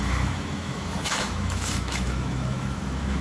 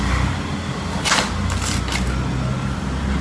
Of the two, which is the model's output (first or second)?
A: first